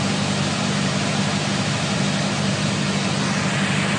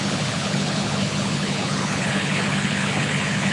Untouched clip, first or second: first